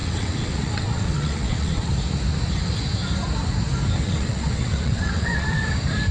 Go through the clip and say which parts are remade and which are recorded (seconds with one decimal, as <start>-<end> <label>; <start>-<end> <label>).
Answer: 0.0-1.9 remade; 1.9-4.0 recorded; 4.0-5.6 remade; 5.6-6.1 recorded